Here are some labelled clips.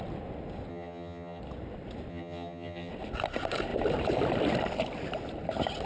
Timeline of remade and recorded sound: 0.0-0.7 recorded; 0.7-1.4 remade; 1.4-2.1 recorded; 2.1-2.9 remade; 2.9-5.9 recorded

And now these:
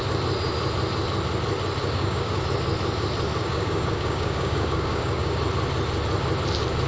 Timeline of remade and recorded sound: 0.0-1.8 recorded; 1.8-2.4 remade; 2.4-3.4 recorded; 3.4-5.4 remade; 5.4-6.9 recorded

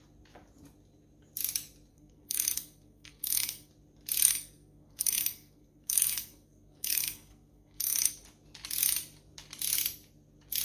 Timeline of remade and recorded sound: 0.0-1.9 recorded; 1.9-3.7 remade; 3.7-4.3 recorded; 4.3-8.1 remade; 8.1-10.6 recorded

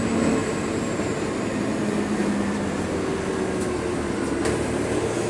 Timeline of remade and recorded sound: 0.0-0.4 recorded; 0.4-2.9 remade; 2.9-5.3 recorded